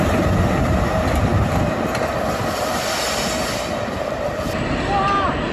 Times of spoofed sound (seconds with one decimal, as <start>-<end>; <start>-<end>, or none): none